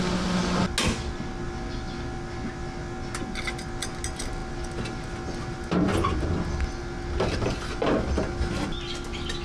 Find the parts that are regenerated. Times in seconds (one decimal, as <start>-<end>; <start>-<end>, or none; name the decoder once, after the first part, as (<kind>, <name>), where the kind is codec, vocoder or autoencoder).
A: none